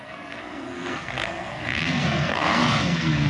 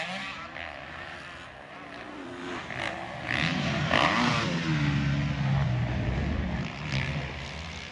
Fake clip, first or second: first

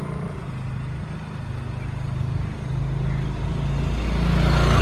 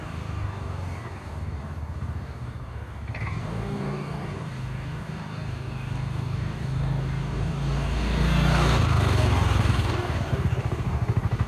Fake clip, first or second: second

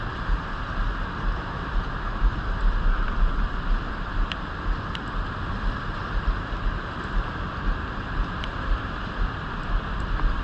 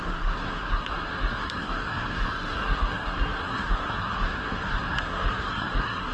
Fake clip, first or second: second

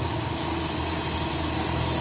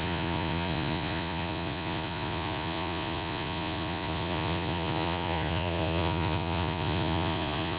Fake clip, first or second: second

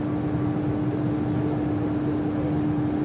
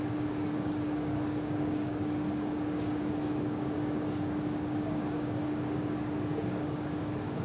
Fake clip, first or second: second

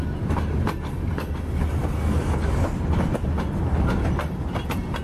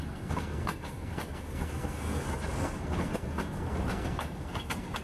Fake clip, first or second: second